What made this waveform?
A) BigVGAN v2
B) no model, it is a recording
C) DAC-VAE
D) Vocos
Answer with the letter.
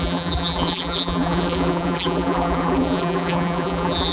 A